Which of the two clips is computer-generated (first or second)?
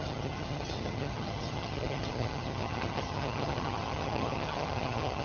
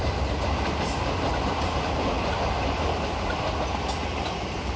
first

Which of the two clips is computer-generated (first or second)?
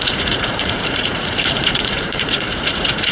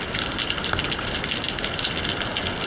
first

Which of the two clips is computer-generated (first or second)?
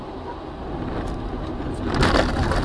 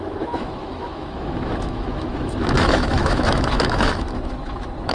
second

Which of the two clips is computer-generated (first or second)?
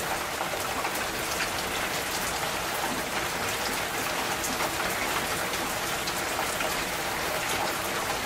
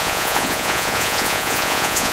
second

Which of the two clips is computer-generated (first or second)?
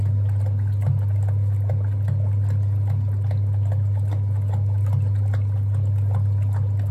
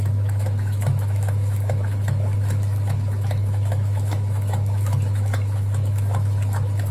second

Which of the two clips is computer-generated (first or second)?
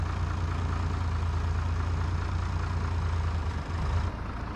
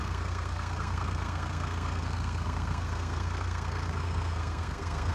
second